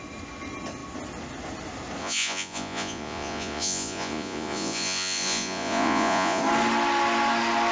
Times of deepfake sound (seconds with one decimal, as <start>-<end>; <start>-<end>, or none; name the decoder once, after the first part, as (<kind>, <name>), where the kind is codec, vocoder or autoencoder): 2.0-6.4 (vocoder, Vocos)